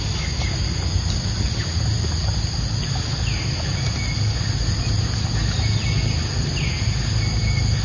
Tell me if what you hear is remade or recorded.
recorded